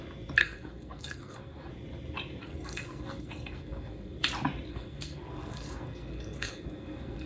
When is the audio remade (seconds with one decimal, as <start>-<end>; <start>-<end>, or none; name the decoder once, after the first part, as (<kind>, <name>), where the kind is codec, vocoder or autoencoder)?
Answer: 0.4-1.7 (codec, SNAC); 2.4-4.2; 4.7-7.3